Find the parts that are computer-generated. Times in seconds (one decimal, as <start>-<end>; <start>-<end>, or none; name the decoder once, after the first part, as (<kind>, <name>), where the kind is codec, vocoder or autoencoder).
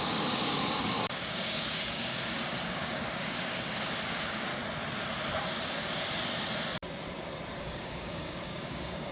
0.0-4.5 (codec, DAC); 7.6-9.1